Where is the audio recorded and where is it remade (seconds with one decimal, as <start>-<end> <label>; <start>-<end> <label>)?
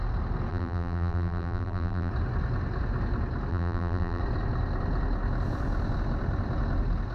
0.0-0.5 recorded; 0.5-2.1 remade; 2.1-3.5 recorded; 3.5-4.2 remade; 4.2-7.1 recorded